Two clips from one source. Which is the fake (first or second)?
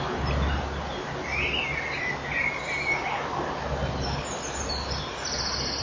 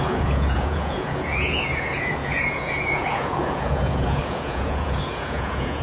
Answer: second